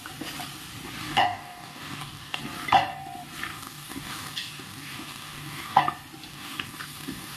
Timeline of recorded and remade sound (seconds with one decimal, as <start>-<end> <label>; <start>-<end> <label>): 0.0-1.0 recorded; 1.0-2.4 remade; 2.4-3.5 recorded; 3.5-5.8 remade; 5.8-6.3 recorded; 6.3-7.4 remade